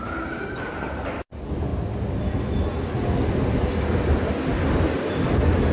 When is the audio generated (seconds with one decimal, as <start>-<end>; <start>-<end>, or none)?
none